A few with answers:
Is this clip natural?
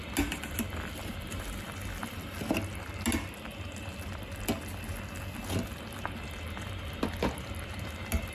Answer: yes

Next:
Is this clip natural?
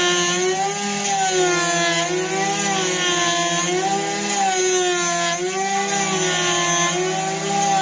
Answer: yes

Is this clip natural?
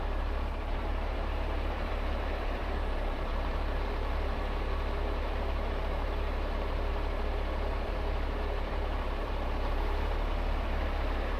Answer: no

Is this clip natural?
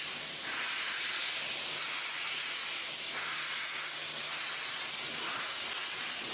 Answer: yes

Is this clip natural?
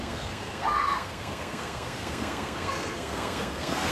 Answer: no